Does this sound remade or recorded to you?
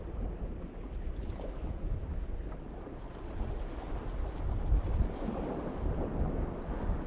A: recorded